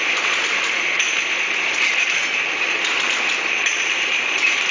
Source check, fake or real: fake